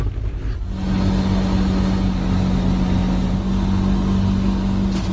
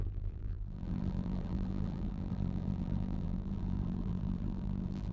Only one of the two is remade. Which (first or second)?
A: second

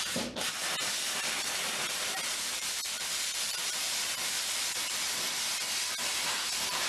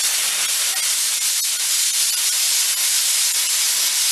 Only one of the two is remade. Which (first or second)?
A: first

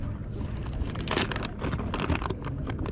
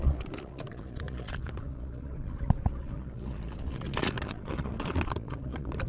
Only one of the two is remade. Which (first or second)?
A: second